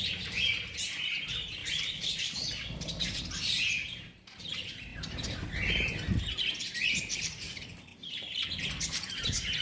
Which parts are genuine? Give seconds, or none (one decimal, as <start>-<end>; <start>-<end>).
4.9-6.9